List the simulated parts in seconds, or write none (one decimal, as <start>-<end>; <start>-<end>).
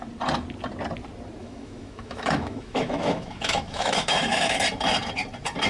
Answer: 1.4-4.6